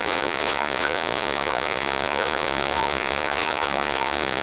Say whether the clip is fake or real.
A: fake